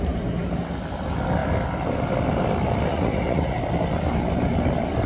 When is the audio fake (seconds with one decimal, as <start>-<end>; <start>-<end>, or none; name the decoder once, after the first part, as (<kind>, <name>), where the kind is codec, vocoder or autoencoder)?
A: 2.9-3.6 (vocoder, Vocos)